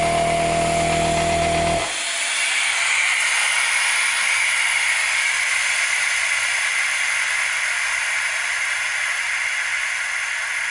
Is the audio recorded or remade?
recorded